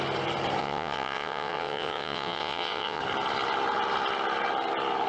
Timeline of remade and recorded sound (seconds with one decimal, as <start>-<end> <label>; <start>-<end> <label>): 0.0-0.6 recorded; 0.6-3.0 remade; 3.0-5.1 recorded